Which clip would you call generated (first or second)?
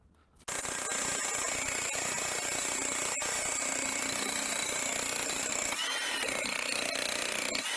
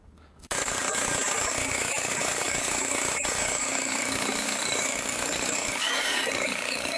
second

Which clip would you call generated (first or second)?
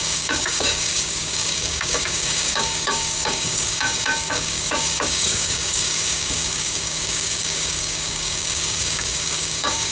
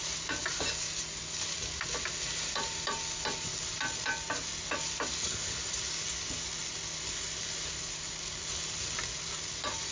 first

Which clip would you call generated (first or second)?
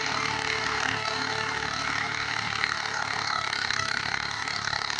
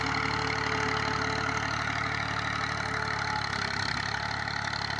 first